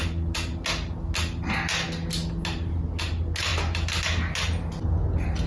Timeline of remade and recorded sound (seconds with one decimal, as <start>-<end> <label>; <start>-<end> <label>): 0.0-5.5 recorded